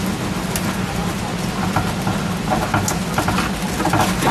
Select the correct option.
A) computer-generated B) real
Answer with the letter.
B